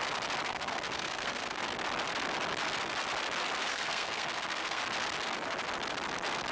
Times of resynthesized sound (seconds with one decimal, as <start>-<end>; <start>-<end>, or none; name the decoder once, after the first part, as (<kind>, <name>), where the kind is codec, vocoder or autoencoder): 0.5-1.6 (codec, SNAC); 3.7-4.8